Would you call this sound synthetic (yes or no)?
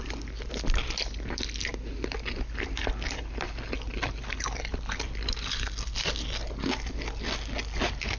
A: no